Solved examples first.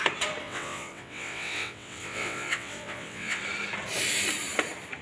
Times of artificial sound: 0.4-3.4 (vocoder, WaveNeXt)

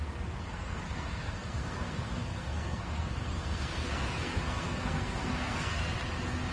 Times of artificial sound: 0.0-5.8 (codec, SNAC)

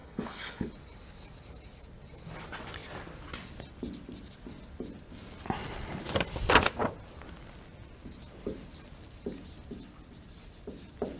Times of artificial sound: 0.0-0.7 (codec, HILCodec)

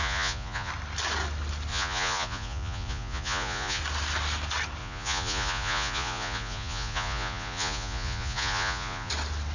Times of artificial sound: 0.0-0.7 (vocoder, Vocos); 1.7-3.8; 4.8-9.1

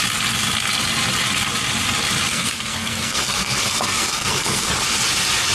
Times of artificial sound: 2.3-4.7 (codec, SNAC)

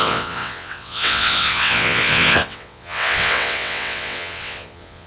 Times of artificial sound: 0.0-5.1 (vocoder, WaveNeXt)

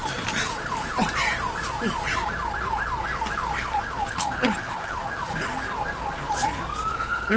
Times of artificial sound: 4.1-5.0 (codec, HILCodec); 6.9-7.4